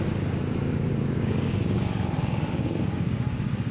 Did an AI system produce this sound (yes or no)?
yes